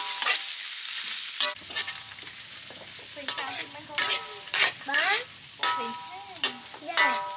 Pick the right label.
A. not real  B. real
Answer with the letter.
B